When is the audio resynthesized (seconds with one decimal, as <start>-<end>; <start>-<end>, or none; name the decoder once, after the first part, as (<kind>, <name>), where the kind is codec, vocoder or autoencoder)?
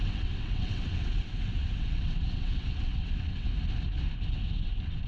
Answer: 0.0-3.5 (vocoder, WaveNeXt); 4.6-5.1